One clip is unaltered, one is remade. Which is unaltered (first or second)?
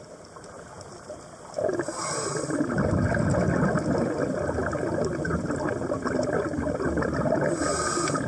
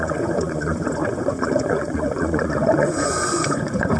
first